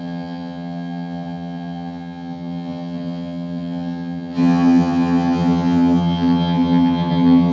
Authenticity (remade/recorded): remade